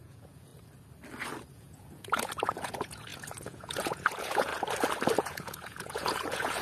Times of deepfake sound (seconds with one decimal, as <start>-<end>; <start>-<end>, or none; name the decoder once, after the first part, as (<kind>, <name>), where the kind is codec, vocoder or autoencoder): 0.0-0.5 (vocoder, Vocos); 1.5-4.5; 5.2-6.6